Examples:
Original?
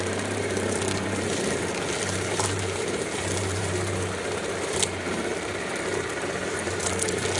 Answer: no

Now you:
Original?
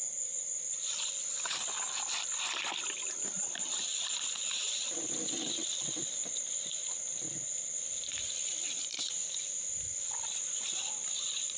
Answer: yes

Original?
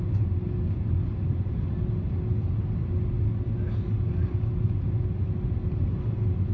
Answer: yes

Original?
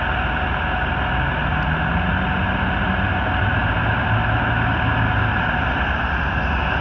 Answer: yes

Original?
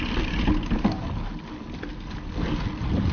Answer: yes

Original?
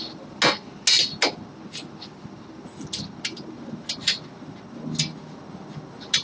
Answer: yes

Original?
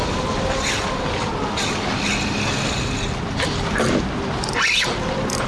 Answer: yes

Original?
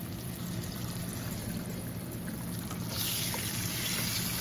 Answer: yes